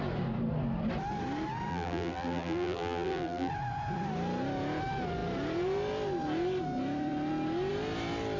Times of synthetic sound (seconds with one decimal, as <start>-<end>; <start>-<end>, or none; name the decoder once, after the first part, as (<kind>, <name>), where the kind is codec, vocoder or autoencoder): 1.7-3.5 (vocoder, BigVGAN v2)